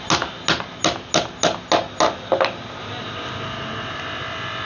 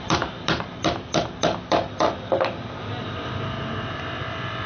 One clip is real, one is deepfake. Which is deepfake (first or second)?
second